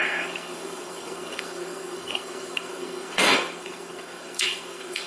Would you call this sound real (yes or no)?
no